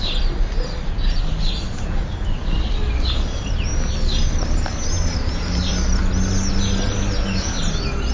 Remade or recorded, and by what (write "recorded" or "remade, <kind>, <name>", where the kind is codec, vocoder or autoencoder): recorded